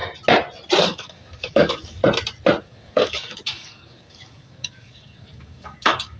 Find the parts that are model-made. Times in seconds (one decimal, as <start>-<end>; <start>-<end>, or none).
0.8-2.0; 2.6-6.2